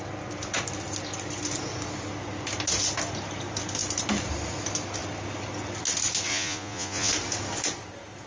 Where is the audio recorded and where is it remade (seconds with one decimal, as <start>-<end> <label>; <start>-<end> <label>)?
0.0-6.3 recorded; 6.3-7.1 remade; 7.1-8.3 recorded